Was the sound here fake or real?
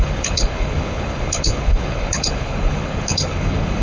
fake